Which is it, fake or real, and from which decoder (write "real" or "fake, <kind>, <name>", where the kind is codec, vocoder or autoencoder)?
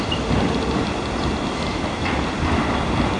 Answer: real